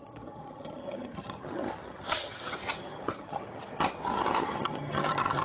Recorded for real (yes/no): no